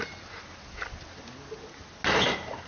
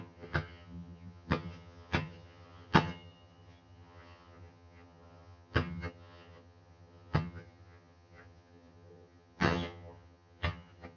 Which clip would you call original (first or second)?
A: first